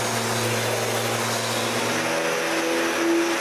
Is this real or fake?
real